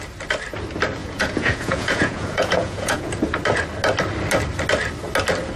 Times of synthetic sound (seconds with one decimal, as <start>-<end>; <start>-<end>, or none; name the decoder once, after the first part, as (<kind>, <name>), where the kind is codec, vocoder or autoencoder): 1.0-3.1 (vocoder, Vocos)